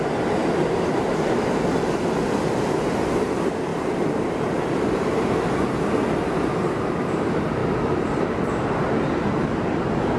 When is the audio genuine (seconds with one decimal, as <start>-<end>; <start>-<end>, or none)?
0.0-0.4; 2.6-3.7; 5.3-7.6; 8.2-10.2